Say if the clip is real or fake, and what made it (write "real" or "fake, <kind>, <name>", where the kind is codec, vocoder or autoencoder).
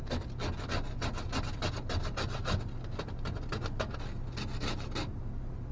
real